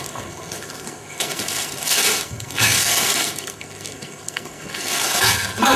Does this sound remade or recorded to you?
remade